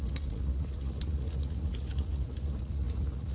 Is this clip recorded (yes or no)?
no